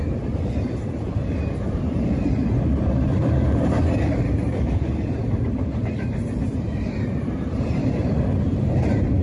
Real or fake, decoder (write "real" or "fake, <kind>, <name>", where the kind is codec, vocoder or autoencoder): fake, vocoder, BigVGAN v2